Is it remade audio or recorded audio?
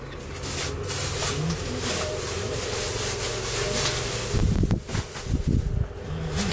recorded